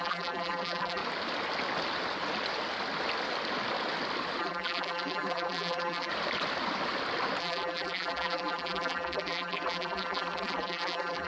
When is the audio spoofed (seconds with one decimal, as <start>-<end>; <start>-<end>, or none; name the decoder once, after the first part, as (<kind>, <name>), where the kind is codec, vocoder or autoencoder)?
0.0-1.0 (vocoder, BigVGAN v2); 4.4-6.1; 7.4-11.3